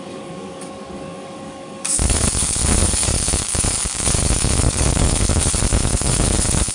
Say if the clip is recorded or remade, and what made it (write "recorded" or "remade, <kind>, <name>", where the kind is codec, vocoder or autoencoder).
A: remade, codec, DAC